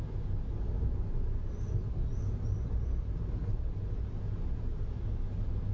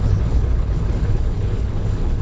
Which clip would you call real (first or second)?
first